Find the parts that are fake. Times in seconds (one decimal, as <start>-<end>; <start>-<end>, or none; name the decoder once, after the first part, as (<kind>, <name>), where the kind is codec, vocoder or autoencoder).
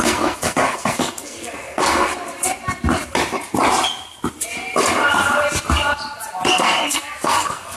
0.0-2.1 (codec, SNAC); 6.5-7.8